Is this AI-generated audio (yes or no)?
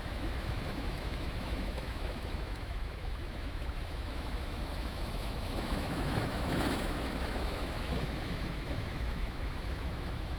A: yes